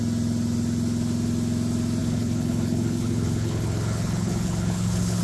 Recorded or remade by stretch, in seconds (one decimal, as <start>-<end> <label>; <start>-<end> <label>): 0.0-2.0 recorded; 2.0-5.2 remade